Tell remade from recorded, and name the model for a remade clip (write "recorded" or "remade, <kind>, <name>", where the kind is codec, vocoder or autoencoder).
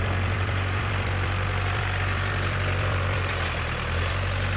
remade, vocoder, BigVGAN v2